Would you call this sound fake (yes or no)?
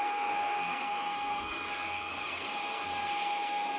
yes